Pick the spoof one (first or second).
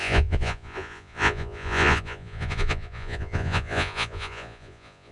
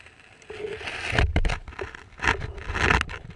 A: first